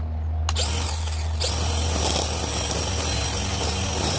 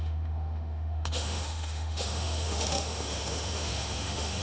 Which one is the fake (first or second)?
second